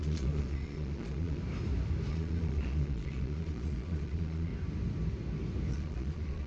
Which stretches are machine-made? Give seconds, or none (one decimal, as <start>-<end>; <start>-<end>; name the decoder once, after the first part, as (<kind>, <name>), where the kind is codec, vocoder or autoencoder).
0.0-1.4 (vocoder, Vocos); 2.1-4.5; 5.7-6.5